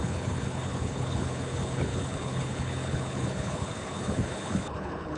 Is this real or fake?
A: fake